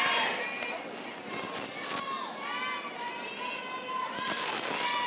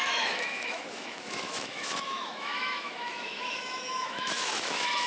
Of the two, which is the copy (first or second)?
second